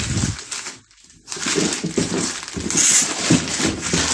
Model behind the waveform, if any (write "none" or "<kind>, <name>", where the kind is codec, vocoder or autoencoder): none